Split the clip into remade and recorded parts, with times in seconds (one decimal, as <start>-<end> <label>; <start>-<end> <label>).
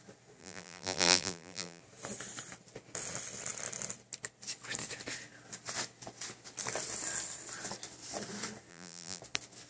0.0-0.4 recorded; 0.4-1.8 remade; 1.8-8.7 recorded; 8.7-9.2 remade; 9.2-9.7 recorded